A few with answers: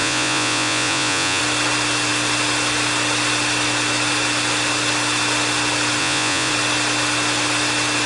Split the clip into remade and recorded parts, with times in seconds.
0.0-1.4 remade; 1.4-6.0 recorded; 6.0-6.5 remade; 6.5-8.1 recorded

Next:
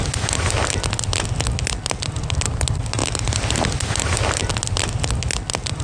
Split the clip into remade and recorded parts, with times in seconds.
0.0-5.8 recorded

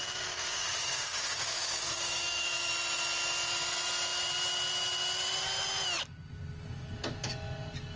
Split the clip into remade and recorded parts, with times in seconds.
0.0-2.7 remade; 2.7-8.0 recorded